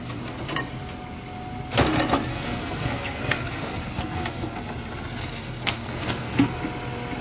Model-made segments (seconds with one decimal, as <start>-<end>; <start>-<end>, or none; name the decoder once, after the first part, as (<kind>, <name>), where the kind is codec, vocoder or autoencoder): 2.3-4.6 (codec, SNAC); 5.2-6.6